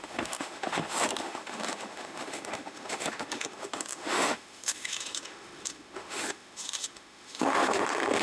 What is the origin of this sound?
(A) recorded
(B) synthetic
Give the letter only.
B